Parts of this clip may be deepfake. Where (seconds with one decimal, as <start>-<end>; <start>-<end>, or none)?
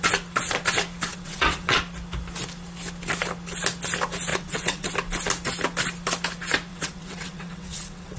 1.1-1.8; 4.3-4.9; 6.7-8.2